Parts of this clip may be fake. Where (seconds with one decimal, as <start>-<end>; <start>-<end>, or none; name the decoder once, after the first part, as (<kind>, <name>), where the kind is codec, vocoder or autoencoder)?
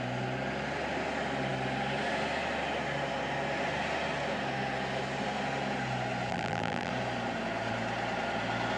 6.3-6.9 (vocoder, BigVGAN v2)